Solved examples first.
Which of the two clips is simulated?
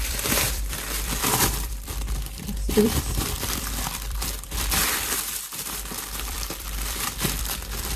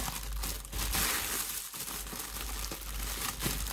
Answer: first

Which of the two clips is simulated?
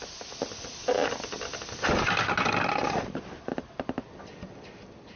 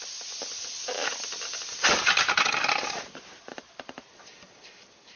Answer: second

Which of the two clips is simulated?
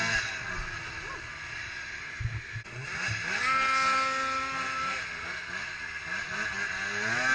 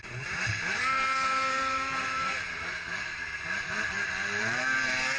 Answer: second